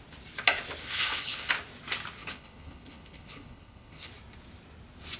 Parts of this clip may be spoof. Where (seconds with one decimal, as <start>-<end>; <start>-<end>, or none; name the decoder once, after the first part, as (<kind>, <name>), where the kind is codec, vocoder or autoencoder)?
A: 0.8-1.5 (codec, HILCodec); 2.2-4.1